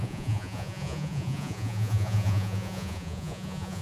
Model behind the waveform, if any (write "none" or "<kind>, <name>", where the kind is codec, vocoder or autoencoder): vocoder, Vocos